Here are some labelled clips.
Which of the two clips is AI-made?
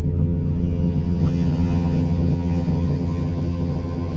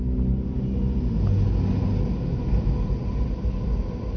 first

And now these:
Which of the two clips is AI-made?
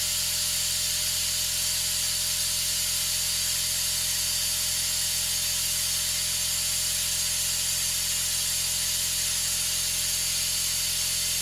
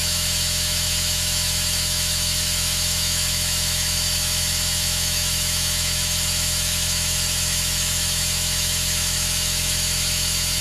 second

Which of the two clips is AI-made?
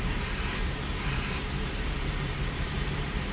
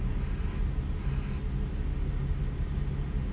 first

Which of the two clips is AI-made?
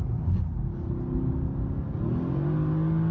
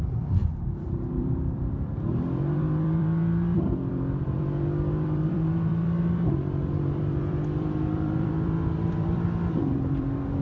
second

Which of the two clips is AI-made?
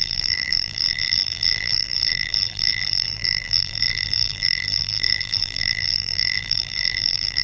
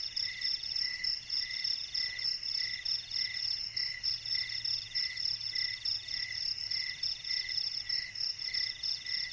first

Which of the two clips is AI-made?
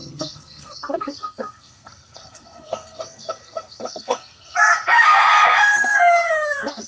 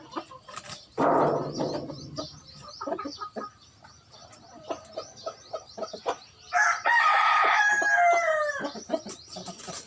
first